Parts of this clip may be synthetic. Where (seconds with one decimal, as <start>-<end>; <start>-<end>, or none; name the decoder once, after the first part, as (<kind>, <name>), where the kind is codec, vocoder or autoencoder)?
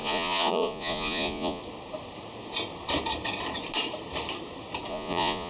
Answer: 0.0-1.6 (vocoder, Vocos); 4.9-5.5